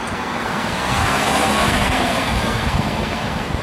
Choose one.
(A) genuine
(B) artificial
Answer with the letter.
B